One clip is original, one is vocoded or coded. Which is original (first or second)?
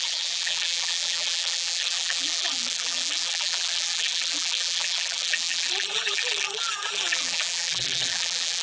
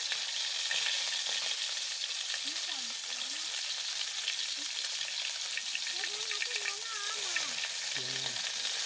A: second